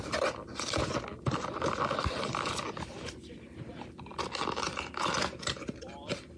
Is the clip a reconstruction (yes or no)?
no